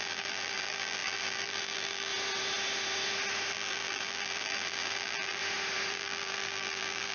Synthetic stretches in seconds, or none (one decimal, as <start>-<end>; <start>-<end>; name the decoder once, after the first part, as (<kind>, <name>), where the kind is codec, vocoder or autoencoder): 0.0-2.1 (vocoder, BigVGAN v2); 3.5-5.4; 5.9-7.1